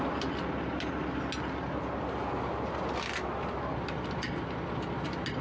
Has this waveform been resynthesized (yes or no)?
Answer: no